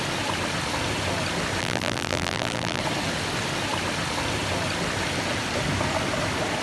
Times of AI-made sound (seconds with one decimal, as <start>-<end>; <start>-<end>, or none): 1.6-2.8